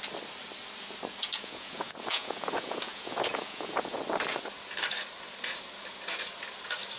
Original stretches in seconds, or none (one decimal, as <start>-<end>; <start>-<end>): 0.0-1.2; 4.0-7.0